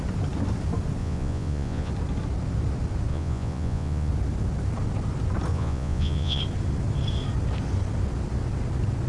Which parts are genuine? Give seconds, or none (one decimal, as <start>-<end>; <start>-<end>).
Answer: 0.0-1.0; 1.9-3.1; 4.1-5.5; 6.4-9.1